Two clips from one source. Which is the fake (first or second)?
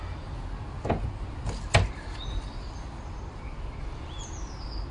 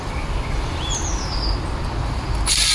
second